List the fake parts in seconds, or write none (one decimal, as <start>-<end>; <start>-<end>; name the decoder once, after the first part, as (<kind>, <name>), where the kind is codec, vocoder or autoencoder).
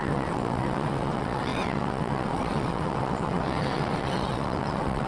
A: 0.0-5.1 (vocoder, WaveNeXt)